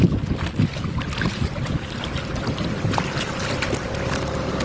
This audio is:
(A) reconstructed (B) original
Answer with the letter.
B